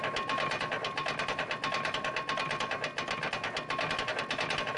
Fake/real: real